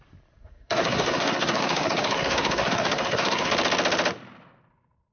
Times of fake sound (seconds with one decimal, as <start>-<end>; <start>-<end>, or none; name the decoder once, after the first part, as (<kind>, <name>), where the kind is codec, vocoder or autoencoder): 0.4-3.5 (codec, SNAC)